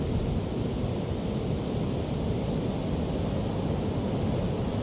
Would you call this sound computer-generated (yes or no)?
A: no